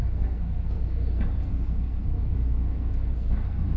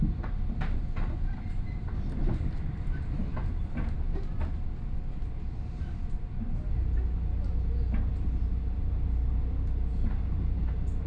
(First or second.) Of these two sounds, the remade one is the first